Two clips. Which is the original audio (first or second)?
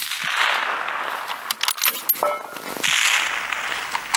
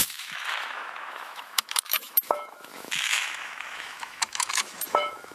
first